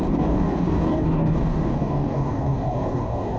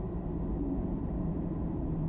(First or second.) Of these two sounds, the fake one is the first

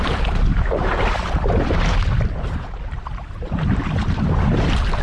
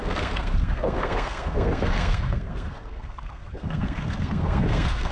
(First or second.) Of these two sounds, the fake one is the second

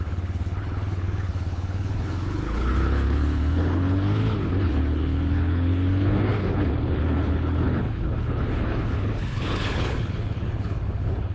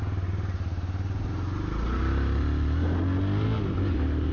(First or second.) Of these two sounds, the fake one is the first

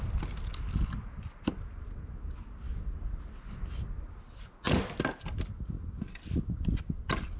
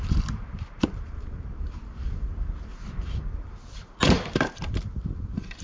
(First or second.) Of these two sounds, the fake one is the second